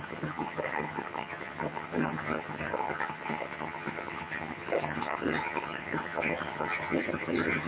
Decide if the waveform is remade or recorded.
remade